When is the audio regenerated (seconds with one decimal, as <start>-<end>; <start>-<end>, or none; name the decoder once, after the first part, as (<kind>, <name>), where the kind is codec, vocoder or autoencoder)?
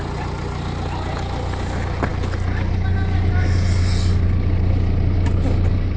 none